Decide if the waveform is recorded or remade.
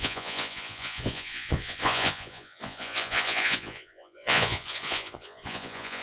remade